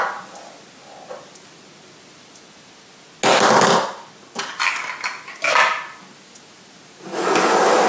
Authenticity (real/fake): real